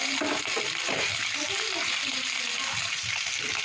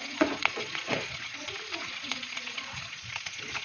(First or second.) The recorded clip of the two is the first